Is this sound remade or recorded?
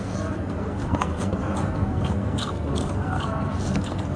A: remade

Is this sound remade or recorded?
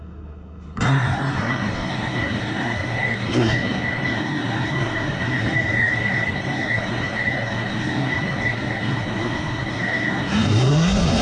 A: remade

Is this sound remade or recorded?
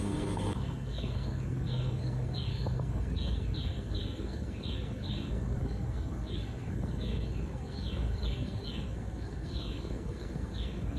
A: remade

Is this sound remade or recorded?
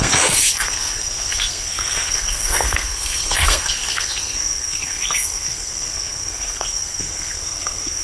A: remade